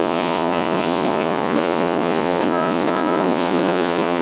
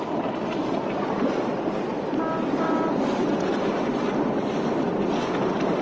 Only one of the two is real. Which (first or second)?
second